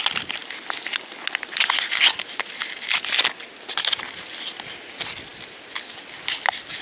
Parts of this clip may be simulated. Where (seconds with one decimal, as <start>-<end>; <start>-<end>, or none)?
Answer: none